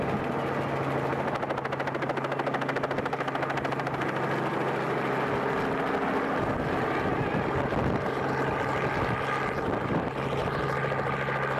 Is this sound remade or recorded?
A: recorded